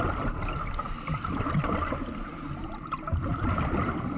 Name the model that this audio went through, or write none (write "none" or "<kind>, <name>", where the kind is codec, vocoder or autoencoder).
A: vocoder, BigVGAN v2